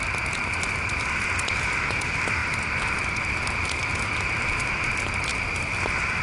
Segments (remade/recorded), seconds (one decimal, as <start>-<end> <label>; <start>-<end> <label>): 0.0-5.3 recorded; 5.3-5.8 remade; 5.8-6.2 recorded